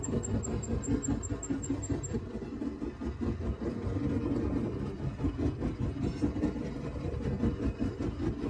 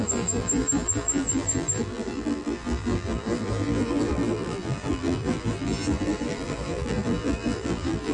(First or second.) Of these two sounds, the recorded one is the first